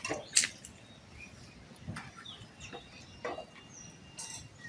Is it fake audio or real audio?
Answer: real